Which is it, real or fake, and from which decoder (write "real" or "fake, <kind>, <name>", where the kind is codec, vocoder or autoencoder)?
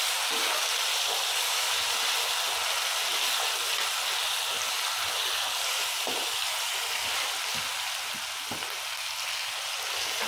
real